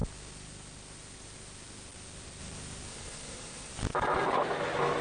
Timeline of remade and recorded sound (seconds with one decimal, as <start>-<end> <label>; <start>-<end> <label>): 0.0-2.9 recorded; 2.9-3.7 remade; 3.7-5.0 recorded